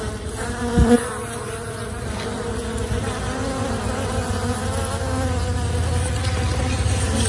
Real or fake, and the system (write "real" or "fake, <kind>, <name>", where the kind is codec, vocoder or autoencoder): real